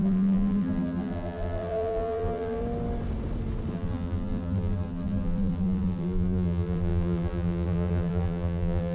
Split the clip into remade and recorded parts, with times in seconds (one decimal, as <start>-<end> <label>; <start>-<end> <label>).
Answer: 0.0-2.6 remade; 2.6-3.7 recorded; 3.7-8.9 remade